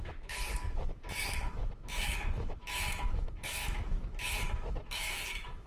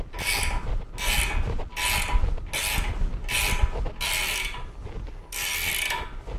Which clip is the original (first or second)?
second